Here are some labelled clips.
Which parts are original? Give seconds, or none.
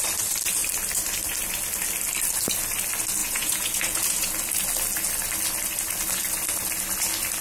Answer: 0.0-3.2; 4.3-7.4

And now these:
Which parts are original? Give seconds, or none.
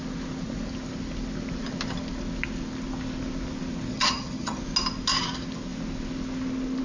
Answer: 0.0-3.9; 4.6-6.8